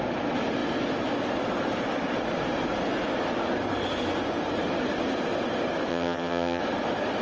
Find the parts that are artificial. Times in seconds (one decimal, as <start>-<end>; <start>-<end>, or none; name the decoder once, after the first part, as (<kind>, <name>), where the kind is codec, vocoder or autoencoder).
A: 5.9-6.6 (vocoder, HiFi-GAN)